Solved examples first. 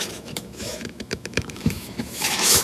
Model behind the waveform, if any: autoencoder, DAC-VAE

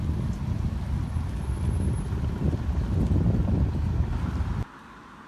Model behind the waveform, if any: none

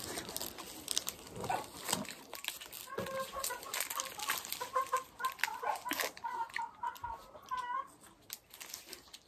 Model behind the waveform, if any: none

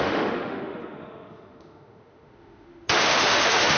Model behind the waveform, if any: autoencoder, DAC-VAE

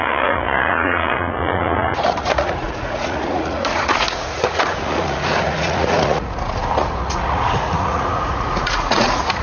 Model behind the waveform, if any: vocoder, Vocos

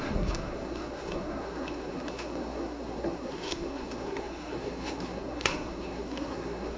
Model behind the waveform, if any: codec, SNAC